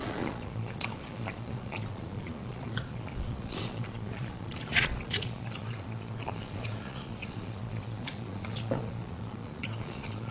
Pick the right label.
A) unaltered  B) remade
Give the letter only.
B